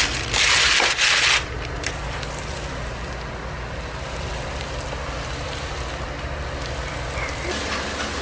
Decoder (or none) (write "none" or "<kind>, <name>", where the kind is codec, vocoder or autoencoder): none